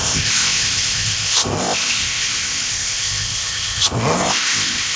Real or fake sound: fake